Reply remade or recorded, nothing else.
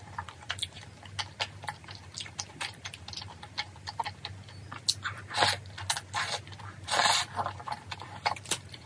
recorded